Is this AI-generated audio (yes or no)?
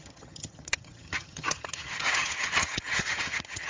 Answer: yes